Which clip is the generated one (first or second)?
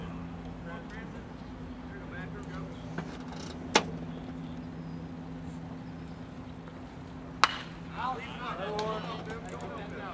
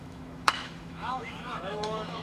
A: second